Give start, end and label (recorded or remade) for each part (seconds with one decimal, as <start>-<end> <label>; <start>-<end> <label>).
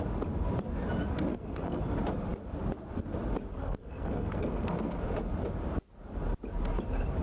0.0-1.3 recorded; 1.3-1.8 remade; 1.8-3.5 recorded; 3.5-5.0 remade; 5.0-7.2 recorded